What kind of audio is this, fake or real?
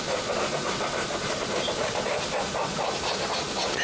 fake